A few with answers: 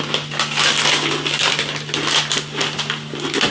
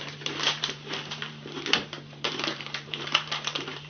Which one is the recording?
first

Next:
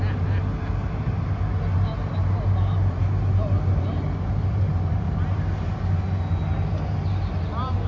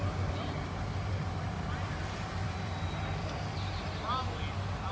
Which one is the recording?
first